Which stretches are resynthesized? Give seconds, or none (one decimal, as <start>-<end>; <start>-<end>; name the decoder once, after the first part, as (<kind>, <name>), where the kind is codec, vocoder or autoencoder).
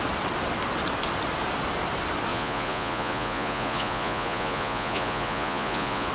2.3-6.1 (vocoder, Vocos)